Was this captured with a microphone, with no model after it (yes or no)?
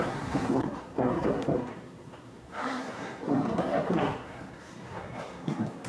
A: no